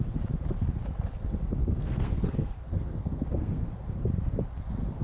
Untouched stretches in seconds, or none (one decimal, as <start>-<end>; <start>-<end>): 0.0-1.6; 3.7-5.0